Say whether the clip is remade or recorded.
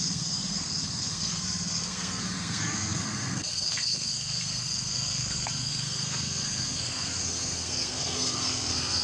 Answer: remade